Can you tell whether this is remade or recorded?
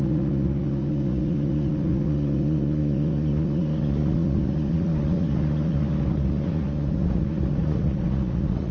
remade